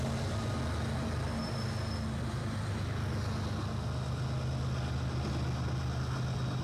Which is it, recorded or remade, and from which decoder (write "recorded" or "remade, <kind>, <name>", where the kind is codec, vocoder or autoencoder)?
recorded